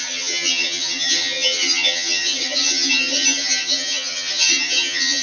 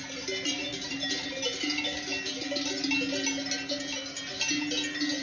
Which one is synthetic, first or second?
first